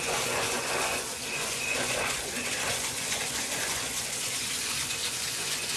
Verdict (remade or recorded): remade